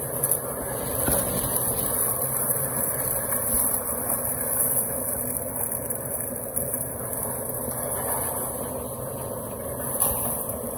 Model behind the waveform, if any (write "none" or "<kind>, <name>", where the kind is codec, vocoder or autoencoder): none